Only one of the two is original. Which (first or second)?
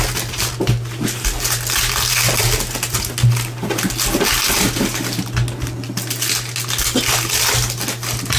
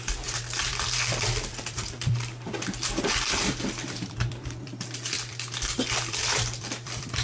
first